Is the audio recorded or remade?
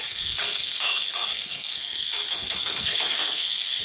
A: remade